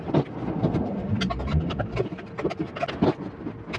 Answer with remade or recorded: recorded